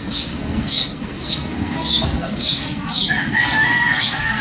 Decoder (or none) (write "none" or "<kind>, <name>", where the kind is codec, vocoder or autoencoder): codec, SNAC